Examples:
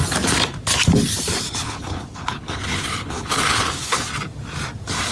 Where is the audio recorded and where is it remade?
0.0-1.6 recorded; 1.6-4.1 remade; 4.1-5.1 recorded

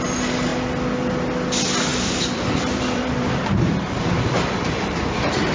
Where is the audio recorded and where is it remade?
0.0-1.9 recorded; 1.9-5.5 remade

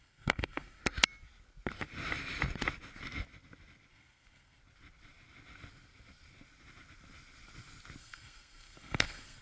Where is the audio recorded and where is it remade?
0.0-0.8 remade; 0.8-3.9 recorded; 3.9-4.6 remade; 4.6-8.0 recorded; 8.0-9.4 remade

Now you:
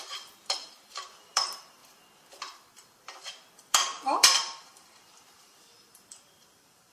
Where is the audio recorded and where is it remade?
0.0-1.8 remade; 1.8-3.0 recorded; 3.0-6.9 remade

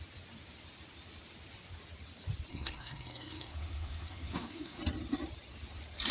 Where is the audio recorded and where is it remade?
0.0-2.5 recorded; 2.5-4.8 remade; 4.8-6.1 recorded